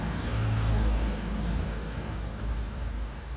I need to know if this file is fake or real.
fake